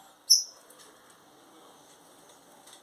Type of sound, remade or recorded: recorded